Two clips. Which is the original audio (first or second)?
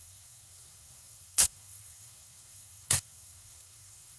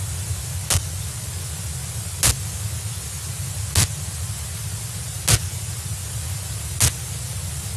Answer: second